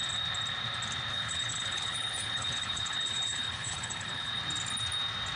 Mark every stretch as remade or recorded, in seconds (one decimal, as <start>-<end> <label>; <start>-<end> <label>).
0.0-1.1 recorded; 1.1-4.3 remade; 4.3-5.4 recorded